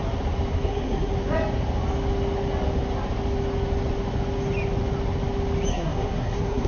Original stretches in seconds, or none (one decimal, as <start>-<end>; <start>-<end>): 0.0-0.5; 1.1-5.7